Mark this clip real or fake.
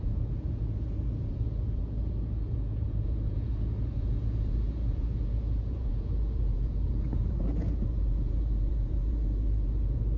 fake